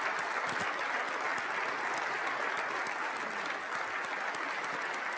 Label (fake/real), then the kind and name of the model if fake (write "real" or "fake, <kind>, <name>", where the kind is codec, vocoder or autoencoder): real